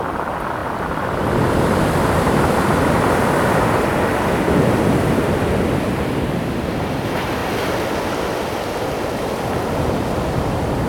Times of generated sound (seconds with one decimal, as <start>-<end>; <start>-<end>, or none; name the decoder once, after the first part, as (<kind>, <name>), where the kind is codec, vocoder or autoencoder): 7.4-8.1 (vocoder, BigVGAN v2)